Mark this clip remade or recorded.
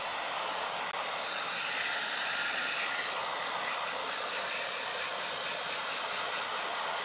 recorded